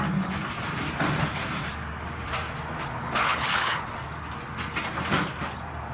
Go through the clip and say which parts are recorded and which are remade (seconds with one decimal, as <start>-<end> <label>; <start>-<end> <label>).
0.0-3.2 recorded; 3.2-3.9 remade; 3.9-5.9 recorded